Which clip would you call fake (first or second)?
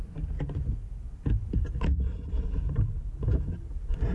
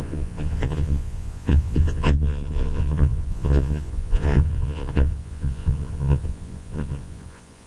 second